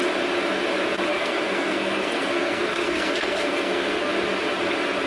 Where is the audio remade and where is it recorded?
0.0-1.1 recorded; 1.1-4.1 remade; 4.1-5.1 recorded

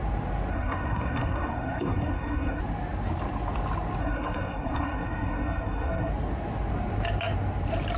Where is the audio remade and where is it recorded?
0.0-0.5 recorded; 0.5-2.6 remade; 2.6-4.0 recorded; 4.0-6.1 remade; 6.1-8.0 recorded

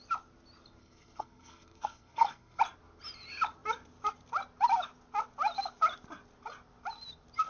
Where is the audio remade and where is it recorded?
0.0-0.8 recorded; 0.8-2.6 remade; 2.6-7.5 recorded

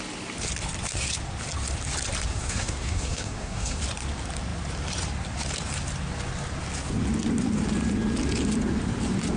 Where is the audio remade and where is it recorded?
0.0-2.3 recorded; 2.3-3.8 remade; 3.8-9.4 recorded

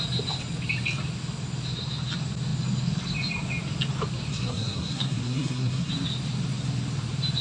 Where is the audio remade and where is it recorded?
0.0-4.3 recorded; 4.3-5.9 remade; 5.9-7.4 recorded

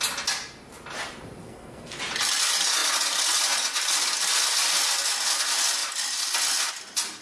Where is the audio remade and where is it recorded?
0.0-1.4 recorded; 1.4-2.0 remade; 2.0-7.2 recorded

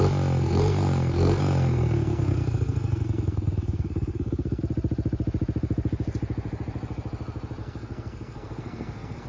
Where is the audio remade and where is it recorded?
0.0-0.4 recorded; 0.4-4.6 remade; 4.6-7.6 recorded; 7.6-9.3 remade

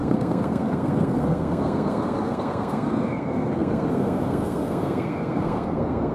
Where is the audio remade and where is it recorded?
0.0-6.1 remade